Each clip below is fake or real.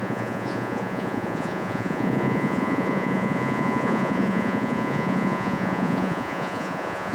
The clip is fake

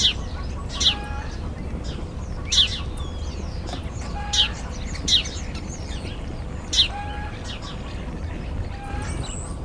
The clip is real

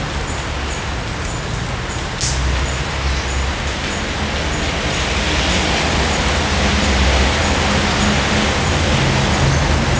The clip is real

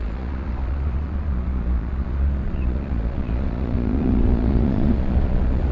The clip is fake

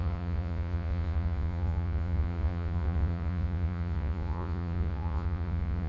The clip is fake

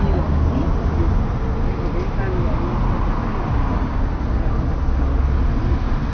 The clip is real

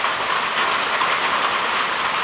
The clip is real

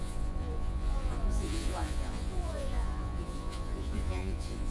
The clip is fake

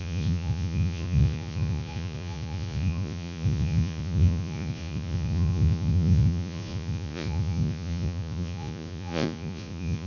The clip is fake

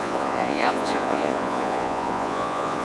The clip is fake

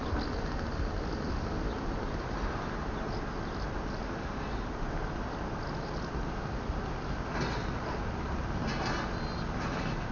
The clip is real